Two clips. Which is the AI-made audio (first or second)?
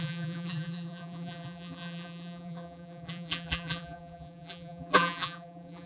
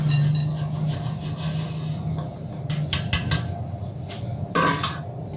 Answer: first